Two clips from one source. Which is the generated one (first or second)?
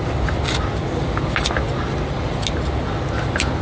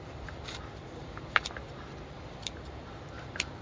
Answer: second